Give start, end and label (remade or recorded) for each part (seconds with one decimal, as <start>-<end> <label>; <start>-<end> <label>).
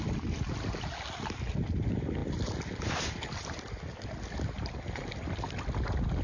0.0-6.2 recorded